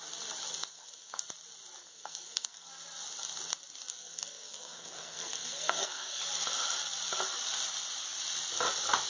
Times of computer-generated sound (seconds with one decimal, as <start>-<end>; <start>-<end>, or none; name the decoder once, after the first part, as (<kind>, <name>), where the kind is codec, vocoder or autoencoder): 0.7-1.2 (codec, SNAC); 1.8-2.7; 3.9-6.2